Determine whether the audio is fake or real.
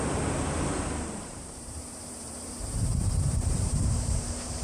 fake